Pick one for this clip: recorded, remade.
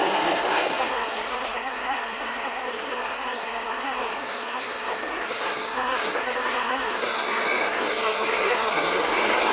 remade